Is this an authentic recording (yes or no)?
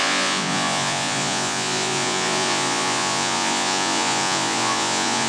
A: no